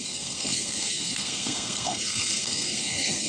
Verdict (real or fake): fake